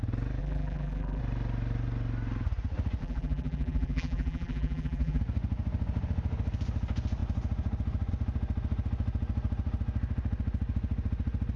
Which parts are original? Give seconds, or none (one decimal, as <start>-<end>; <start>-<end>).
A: 0.0-0.4; 1.2-3.0; 5.2-11.6